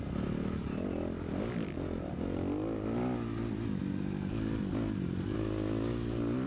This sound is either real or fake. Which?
real